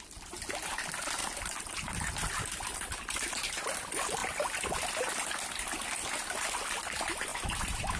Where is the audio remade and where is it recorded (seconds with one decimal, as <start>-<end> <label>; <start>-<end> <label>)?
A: 0.0-8.0 recorded